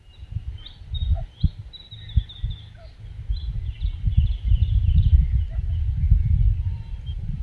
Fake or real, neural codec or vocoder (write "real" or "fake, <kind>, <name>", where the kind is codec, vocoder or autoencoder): real